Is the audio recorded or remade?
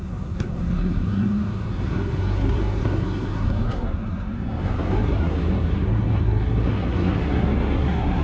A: remade